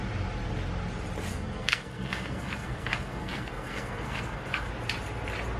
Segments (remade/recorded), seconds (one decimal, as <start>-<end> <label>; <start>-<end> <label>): 0.0-1.3 recorded; 1.3-4.7 remade; 4.7-5.6 recorded